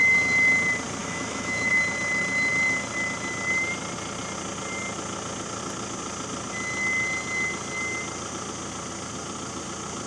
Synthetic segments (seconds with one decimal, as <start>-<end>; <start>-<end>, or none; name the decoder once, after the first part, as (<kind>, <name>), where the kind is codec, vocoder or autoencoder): 1.0-1.7 (autoencoder, DAC-VAE)